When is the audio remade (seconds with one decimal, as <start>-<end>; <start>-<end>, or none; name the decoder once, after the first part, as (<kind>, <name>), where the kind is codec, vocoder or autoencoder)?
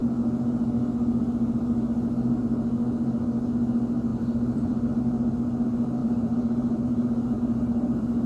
4.1-5.0 (vocoder, BigVGAN v2); 6.0-8.3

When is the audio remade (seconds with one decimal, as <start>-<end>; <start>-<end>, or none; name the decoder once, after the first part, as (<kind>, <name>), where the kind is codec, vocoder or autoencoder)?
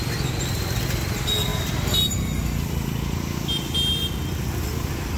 none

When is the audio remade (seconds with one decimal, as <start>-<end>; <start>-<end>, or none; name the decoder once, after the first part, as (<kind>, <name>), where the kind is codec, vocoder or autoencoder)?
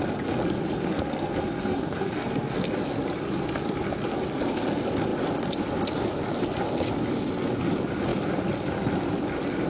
0.9-2.7 (codec, SNAC)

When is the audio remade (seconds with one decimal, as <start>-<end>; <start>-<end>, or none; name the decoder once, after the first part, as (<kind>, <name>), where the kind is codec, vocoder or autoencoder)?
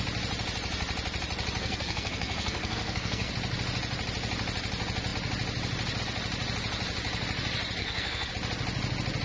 1.6-3.3 (codec, SNAC); 7.8-8.3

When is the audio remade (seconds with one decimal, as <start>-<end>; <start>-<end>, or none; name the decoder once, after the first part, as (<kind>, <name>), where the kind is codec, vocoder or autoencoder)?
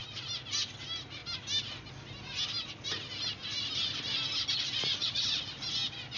none